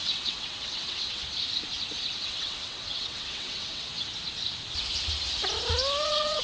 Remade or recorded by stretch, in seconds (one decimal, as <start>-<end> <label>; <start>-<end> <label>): 0.0-1.2 remade; 1.2-2.2 recorded; 2.2-3.9 remade; 3.9-6.0 recorded; 6.0-6.4 remade